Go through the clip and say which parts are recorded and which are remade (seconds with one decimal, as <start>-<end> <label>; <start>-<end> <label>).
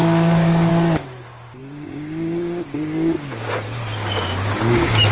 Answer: 0.0-0.7 remade; 0.7-1.6 recorded; 1.6-5.1 remade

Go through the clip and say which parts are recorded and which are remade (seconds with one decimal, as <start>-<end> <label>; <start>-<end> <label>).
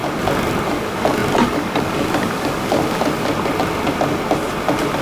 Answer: 0.0-0.7 recorded; 0.7-2.8 remade; 2.8-5.0 recorded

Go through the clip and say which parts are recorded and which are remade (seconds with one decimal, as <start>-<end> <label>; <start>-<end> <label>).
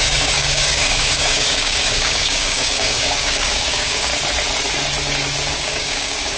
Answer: 0.0-4.1 remade; 4.1-5.5 recorded; 5.5-6.4 remade